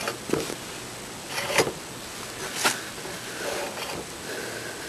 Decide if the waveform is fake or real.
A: real